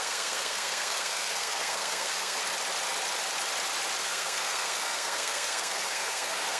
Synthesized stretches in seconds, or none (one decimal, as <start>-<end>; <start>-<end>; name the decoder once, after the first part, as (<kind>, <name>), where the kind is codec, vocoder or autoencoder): 0.0-2.4 (codec, SNAC); 4.0-6.6